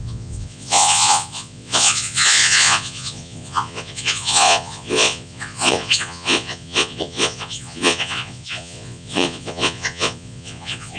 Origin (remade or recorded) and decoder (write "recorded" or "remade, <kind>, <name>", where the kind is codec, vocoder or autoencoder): remade, vocoder, Vocos